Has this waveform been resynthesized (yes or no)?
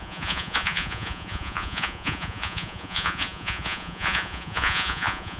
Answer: yes